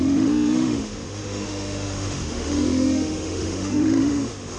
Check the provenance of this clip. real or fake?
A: fake